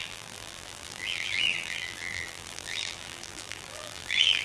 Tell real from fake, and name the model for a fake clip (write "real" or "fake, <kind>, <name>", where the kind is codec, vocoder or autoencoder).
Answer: fake, vocoder, BigVGAN v2